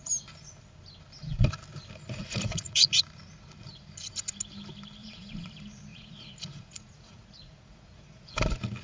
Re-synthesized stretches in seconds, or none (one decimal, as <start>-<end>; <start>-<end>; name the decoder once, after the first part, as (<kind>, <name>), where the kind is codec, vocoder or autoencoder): 2.2-2.9 (vocoder, Vocos); 5.0-5.5; 5.9-8.3